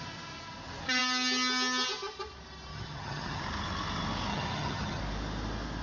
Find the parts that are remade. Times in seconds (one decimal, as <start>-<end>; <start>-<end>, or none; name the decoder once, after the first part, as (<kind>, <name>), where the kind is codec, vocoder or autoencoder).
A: 2.7-3.4 (vocoder, HiFi-GAN); 4.3-5.0